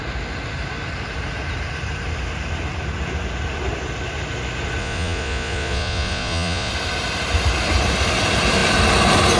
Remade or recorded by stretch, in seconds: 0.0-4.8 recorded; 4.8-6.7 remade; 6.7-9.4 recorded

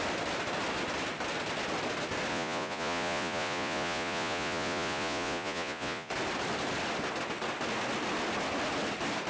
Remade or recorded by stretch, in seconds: 0.0-2.3 recorded; 2.3-6.1 remade; 6.1-9.3 recorded

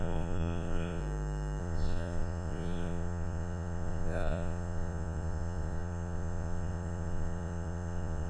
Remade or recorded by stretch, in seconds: 0.0-1.0 remade; 1.0-1.6 recorded; 1.6-8.3 remade

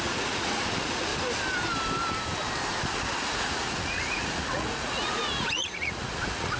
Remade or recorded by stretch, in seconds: 0.0-1.1 remade; 1.1-2.8 recorded; 2.8-6.6 remade

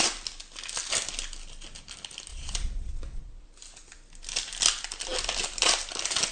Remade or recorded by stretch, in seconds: 0.0-2.3 recorded; 2.3-3.2 remade; 3.2-6.3 recorded

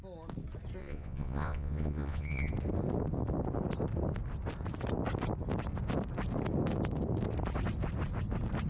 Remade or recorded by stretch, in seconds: 0.0-0.8 recorded; 0.8-2.5 remade; 2.5-8.7 recorded

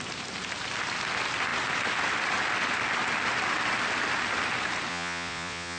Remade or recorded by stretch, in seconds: 0.0-4.9 recorded; 4.9-5.8 remade